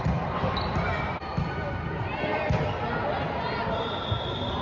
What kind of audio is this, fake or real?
real